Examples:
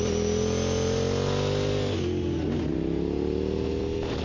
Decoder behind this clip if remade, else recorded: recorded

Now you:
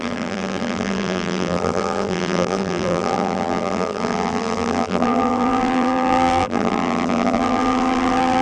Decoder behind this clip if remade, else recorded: remade, vocoder, BigVGAN v2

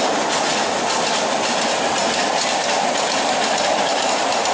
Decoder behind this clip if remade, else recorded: recorded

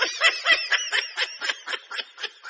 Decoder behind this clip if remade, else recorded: recorded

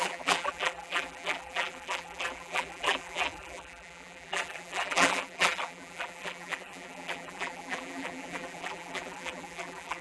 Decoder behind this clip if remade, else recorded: remade, vocoder, BigVGAN v2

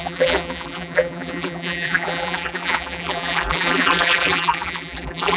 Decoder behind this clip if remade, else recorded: remade, vocoder, BigVGAN v2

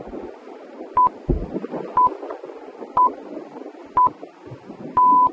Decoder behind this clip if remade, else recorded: recorded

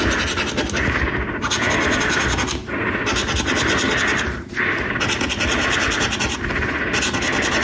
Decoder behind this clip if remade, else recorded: recorded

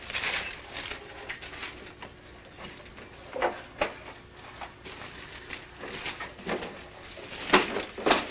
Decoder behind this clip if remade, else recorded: recorded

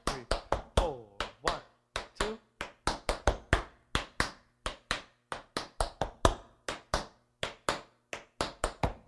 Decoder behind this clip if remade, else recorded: recorded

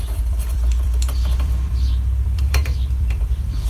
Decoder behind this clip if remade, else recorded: remade, vocoder, BigVGAN v2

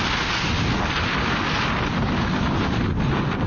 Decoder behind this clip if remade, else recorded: remade, vocoder, BigVGAN v2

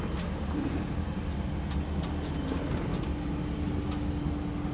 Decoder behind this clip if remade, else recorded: recorded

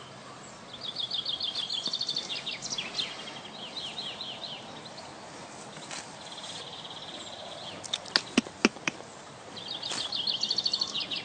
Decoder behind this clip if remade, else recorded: recorded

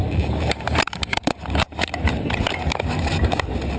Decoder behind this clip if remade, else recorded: remade, vocoder, BigVGAN v2